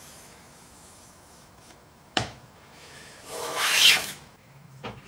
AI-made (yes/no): yes